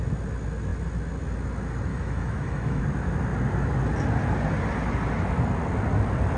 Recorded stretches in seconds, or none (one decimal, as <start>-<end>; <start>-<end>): 0.0-1.9; 2.8-6.4